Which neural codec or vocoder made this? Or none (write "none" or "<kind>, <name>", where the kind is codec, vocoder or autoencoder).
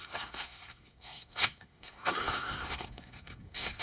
codec, SNAC